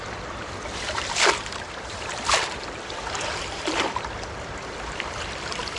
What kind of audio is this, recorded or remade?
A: remade